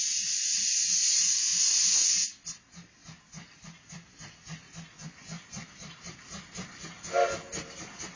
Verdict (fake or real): real